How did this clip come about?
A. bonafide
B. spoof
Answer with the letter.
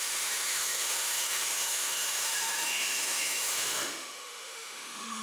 B